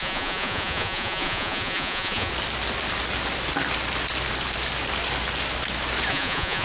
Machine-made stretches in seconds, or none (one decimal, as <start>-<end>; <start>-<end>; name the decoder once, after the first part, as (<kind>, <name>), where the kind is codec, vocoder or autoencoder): 0.0-2.3 (vocoder, Vocos); 6.1-6.6